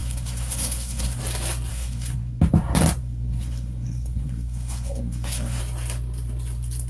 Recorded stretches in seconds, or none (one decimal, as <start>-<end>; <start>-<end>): 1.2-1.7; 2.4-3.0; 5.6-6.9

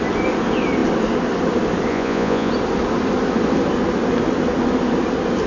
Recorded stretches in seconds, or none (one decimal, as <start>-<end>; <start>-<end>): 0.0-1.9; 2.5-5.5